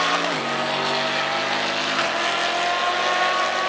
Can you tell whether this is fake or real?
real